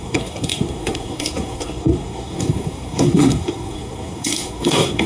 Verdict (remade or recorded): remade